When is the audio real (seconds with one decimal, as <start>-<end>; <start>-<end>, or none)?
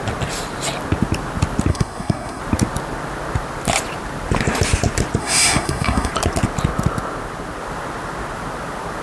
0.0-1.7; 2.4-5.2; 6.1-9.0